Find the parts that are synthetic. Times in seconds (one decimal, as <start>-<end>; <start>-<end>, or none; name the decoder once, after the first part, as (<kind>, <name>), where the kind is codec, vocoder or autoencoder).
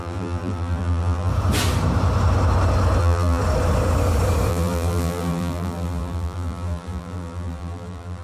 0.0-1.3 (vocoder, BigVGAN v2); 3.0-3.4; 4.5-8.2